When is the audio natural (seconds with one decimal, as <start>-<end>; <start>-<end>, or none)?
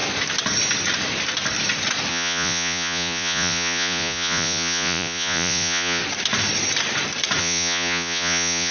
0.0-2.1; 6.0-7.4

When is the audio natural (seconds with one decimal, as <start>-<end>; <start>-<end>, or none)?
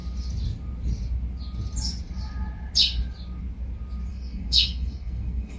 0.0-4.1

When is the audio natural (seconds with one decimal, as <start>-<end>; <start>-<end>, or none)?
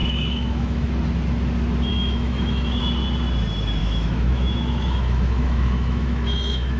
0.9-1.9; 2.8-3.8